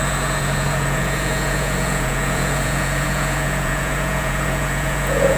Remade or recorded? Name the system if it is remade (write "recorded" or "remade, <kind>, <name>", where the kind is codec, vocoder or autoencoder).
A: remade, vocoder, Vocos